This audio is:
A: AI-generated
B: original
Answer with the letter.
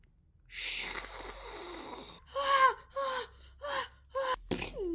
B